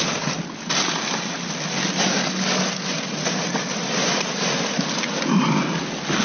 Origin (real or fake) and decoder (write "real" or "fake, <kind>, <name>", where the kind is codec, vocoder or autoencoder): real